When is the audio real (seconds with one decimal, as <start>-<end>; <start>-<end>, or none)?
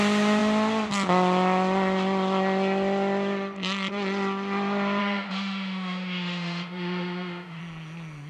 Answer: 0.0-5.0; 7.6-8.3